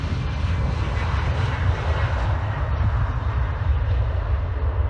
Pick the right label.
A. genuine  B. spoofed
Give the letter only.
A